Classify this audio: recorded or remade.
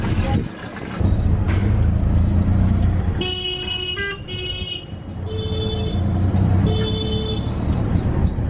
recorded